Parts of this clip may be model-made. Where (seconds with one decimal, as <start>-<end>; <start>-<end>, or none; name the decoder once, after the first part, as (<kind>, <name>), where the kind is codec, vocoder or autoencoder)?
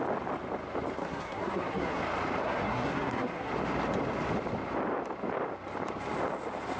1.0-2.0 (codec, SNAC); 2.4-3.5